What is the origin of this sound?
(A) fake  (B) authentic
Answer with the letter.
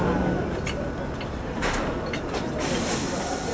B